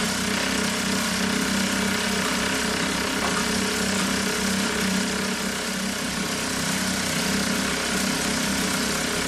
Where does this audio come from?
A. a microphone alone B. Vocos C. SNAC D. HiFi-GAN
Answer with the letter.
A